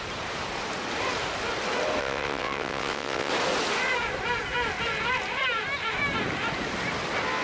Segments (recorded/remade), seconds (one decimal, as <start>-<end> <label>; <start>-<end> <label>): 0.0-2.0 recorded; 2.0-3.3 remade; 3.3-7.4 recorded